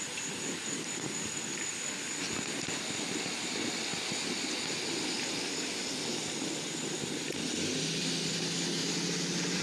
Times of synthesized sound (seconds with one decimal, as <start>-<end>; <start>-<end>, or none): none